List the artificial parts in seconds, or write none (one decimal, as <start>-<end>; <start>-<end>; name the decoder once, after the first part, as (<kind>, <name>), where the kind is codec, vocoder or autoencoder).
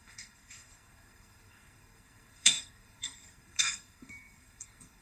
0.0-5.0 (codec, SNAC)